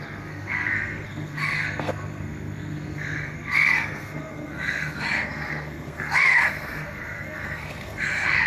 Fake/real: fake